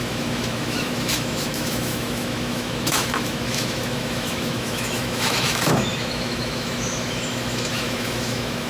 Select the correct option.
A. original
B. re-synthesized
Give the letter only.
B